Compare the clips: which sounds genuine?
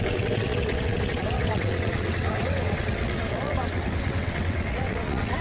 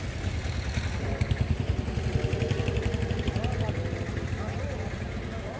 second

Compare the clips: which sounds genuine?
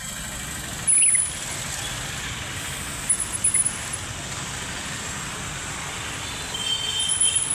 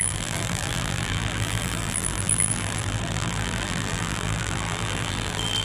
first